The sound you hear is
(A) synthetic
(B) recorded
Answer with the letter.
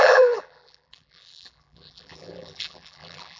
A